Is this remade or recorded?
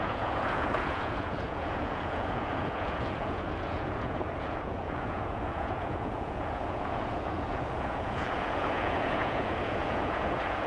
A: remade